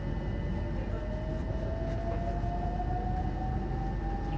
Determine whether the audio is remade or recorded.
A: recorded